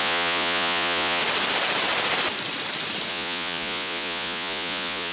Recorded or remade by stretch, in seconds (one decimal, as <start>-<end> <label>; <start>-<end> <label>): 0.0-1.2 remade; 1.2-3.1 recorded; 3.1-5.1 remade

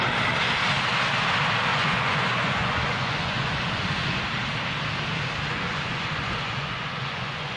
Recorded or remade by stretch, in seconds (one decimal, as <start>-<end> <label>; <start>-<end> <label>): 0.0-1.7 recorded; 1.7-4.2 remade; 4.2-5.5 recorded; 5.5-7.6 remade

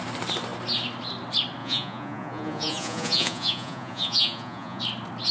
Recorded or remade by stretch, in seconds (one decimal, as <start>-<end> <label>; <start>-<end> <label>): 0.0-1.6 recorded; 1.6-4.8 remade; 4.8-5.3 recorded

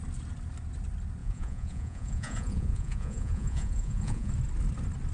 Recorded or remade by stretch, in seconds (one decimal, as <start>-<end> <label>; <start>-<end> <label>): 0.0-1.2 recorded; 1.2-4.3 remade; 4.3-5.1 recorded